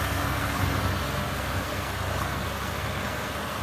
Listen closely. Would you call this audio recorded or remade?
remade